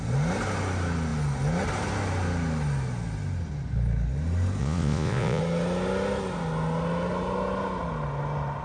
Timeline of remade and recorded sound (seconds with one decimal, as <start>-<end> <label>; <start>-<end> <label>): 0.0-4.6 recorded; 4.6-5.4 remade; 5.4-8.6 recorded